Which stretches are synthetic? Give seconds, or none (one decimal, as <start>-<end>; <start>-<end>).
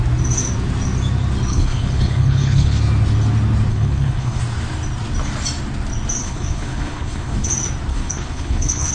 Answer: 1.5-2.8; 3.7-4.4; 6.2-7.5; 7.9-8.9